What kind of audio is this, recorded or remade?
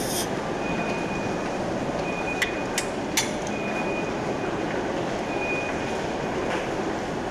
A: recorded